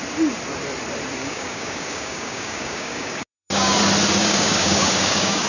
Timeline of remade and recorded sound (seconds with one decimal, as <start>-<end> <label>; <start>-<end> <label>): 0.0-1.2 recorded; 1.2-3.8 remade; 3.8-4.2 recorded; 4.2-5.5 remade